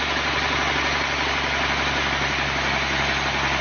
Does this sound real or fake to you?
real